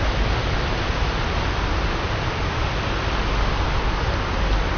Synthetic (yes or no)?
no